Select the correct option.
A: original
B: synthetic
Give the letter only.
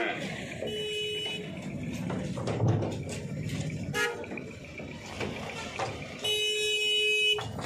A